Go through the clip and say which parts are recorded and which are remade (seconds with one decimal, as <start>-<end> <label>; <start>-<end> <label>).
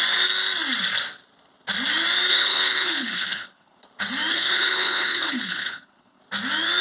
0.0-2.3 recorded; 2.3-3.8 remade; 3.8-4.3 recorded; 4.3-6.2 remade; 6.2-6.8 recorded